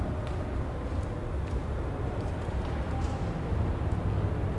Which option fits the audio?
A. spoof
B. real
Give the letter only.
B